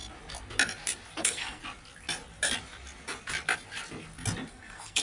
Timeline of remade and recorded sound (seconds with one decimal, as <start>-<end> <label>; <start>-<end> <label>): 0.0-1.2 recorded; 1.2-1.6 remade; 1.6-4.5 recorded; 4.5-5.0 remade